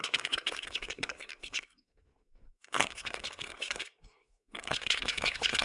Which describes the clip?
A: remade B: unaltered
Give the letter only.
A